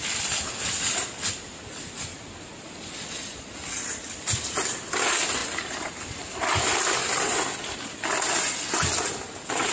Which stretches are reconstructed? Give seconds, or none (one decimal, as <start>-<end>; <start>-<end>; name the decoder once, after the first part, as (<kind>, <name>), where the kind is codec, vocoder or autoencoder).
none